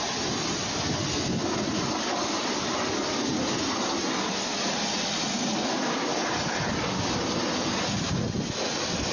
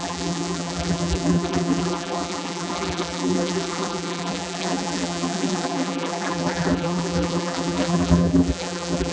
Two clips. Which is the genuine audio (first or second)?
first